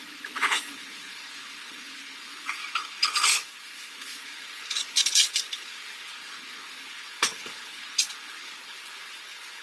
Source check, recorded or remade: remade